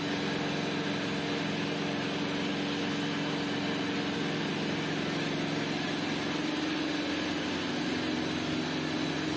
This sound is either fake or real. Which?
real